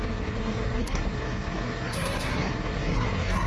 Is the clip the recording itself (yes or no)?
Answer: no